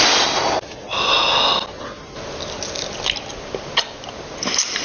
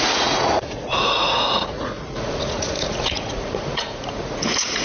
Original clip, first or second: first